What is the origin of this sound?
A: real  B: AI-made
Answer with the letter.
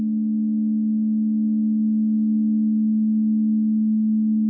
A